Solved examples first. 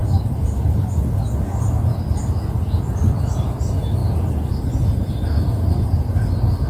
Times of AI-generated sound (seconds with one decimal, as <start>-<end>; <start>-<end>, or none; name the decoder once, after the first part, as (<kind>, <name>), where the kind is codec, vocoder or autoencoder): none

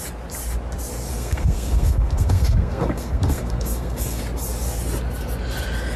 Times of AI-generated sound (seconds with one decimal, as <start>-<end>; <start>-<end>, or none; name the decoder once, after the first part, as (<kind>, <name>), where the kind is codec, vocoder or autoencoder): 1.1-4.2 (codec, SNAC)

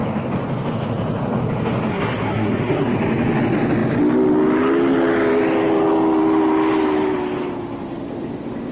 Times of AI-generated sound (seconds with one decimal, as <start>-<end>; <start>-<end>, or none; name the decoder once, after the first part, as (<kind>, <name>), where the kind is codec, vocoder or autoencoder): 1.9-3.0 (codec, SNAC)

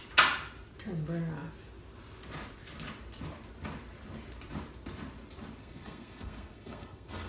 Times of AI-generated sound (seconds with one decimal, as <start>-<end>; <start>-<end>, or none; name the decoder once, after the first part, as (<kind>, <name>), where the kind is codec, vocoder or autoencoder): 5.6-7.3 (codec, SNAC)